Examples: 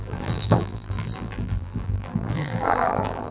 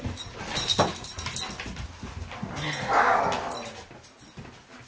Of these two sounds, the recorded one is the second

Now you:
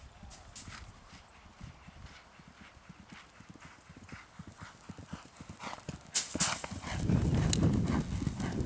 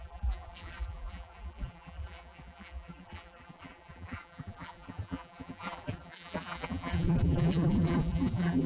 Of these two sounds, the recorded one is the first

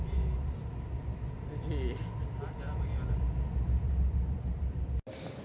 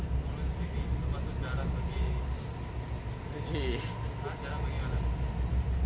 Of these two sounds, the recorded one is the second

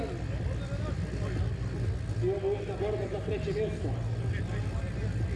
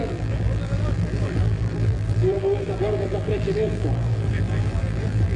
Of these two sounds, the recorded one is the first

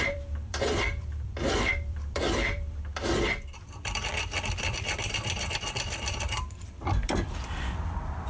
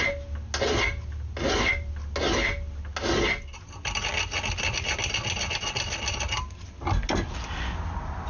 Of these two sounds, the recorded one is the second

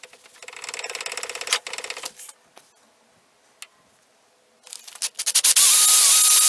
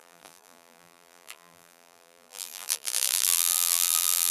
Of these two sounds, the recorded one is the first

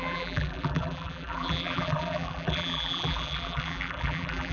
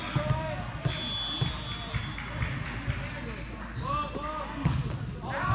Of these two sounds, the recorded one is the second